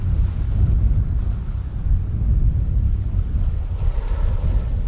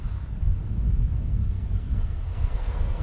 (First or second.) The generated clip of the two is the second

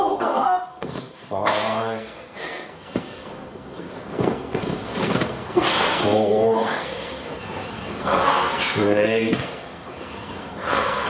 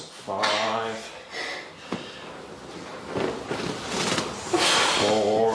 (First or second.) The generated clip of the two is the first